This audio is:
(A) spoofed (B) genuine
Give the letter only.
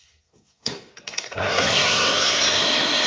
A